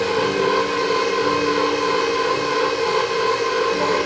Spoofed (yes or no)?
no